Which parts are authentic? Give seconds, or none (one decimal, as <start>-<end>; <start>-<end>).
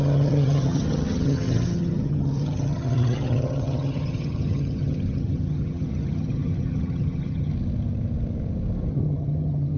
7.5-8.9